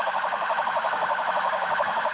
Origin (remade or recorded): remade